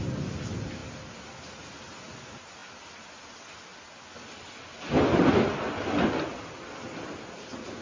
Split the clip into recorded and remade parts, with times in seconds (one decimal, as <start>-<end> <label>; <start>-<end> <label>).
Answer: 0.0-7.8 recorded